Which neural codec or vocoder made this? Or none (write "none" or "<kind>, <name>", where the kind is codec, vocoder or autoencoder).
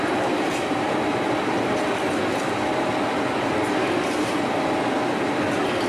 none